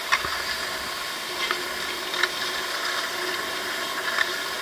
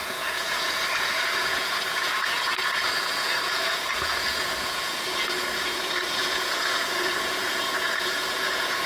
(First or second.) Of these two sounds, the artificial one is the second